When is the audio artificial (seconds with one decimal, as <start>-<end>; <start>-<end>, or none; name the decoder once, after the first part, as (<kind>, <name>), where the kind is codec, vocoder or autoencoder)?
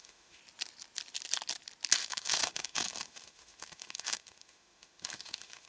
0.0-0.4 (autoencoder, DAC-VAE); 2.0-5.7